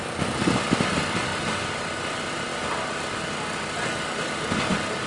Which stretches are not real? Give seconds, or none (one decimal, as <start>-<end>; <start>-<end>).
none